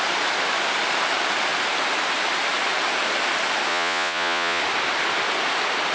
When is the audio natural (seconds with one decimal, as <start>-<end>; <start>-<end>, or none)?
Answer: 0.0-3.7; 4.6-5.9